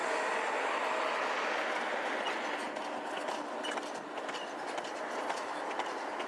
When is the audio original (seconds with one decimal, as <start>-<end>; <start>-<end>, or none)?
0.0-6.3